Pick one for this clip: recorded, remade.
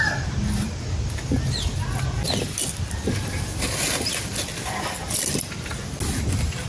recorded